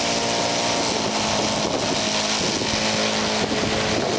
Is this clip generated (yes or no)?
no